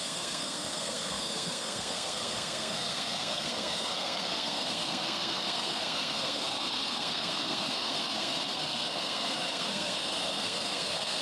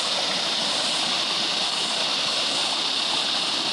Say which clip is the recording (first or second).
second